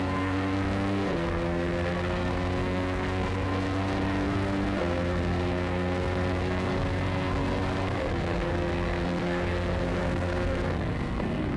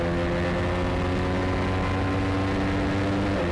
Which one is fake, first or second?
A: first